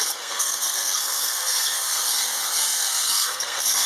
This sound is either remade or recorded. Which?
remade